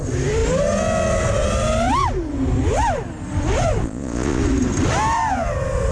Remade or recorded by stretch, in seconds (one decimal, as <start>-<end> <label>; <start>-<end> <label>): 0.0-3.8 recorded; 3.8-4.4 remade; 4.4-5.9 recorded